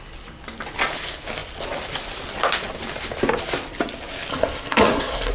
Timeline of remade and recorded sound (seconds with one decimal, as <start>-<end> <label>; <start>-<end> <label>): 0.0-4.3 recorded; 4.3-5.3 remade